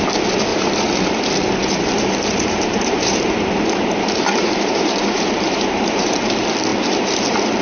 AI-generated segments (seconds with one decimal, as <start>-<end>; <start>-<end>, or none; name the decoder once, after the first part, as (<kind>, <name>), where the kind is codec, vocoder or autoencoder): 0.5-1.1 (vocoder, BigVGAN v2); 1.6-6.2